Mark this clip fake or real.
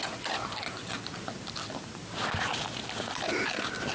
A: real